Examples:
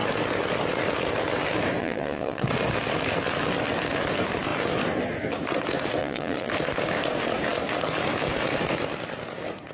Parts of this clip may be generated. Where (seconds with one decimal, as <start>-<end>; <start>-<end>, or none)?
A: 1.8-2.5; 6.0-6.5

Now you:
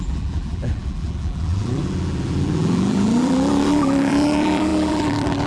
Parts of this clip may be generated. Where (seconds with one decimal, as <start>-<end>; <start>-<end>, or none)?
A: 0.0-5.5

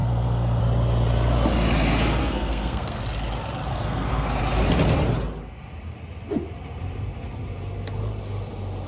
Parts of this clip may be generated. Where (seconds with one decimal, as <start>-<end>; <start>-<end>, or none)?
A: 0.0-0.6; 2.2-3.0; 3.7-4.4

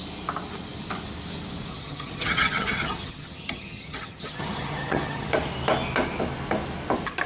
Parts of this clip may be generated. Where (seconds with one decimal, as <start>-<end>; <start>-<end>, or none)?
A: 1.7-5.3

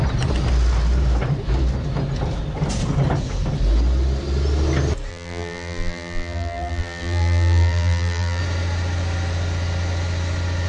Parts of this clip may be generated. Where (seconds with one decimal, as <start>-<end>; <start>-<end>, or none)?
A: 5.1-8.4